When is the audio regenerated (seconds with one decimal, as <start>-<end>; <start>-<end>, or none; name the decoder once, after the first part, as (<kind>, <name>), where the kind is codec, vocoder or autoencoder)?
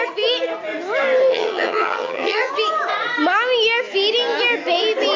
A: 1.3-2.5 (vocoder, HiFi-GAN)